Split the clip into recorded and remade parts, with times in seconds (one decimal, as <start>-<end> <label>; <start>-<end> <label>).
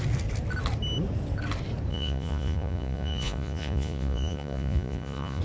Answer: 0.0-1.9 recorded; 1.9-5.4 remade